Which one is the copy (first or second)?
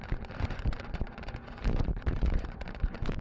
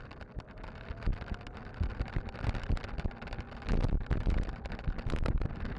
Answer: first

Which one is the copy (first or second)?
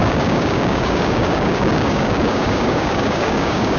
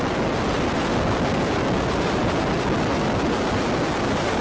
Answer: first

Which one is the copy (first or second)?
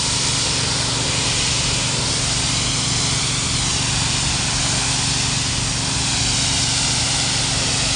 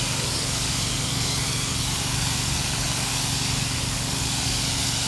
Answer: second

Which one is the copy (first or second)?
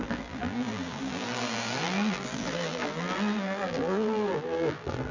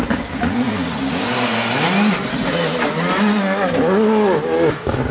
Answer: first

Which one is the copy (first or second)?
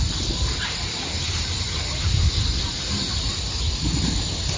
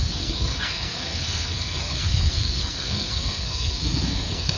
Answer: second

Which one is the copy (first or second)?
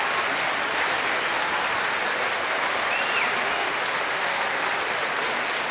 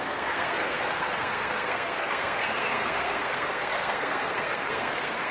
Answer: second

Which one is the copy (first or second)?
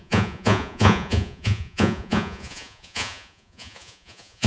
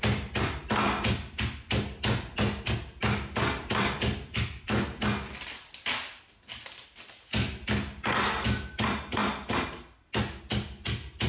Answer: first